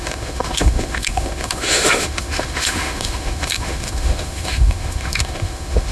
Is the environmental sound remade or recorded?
remade